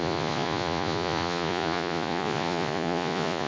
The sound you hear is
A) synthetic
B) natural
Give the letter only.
A